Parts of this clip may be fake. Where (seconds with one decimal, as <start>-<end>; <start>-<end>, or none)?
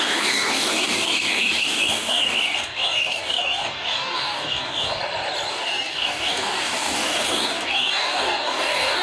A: 0.0-5.0; 5.5-9.0